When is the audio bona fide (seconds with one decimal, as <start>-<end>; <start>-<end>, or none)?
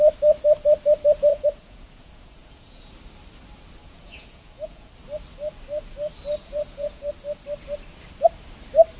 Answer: 0.0-1.3; 2.9-3.8; 4.9-6.4; 7.1-9.0